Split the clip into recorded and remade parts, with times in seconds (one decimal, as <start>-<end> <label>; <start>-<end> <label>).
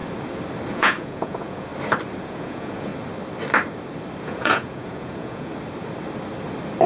0.0-0.7 recorded; 0.7-1.7 remade; 1.7-2.2 recorded; 2.2-2.9 remade; 2.9-4.2 recorded; 4.2-5.5 remade; 5.5-6.9 recorded